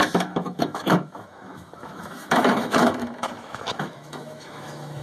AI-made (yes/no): yes